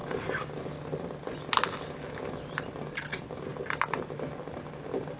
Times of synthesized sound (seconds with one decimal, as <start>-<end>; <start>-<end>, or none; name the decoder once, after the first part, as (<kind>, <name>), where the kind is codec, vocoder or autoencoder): none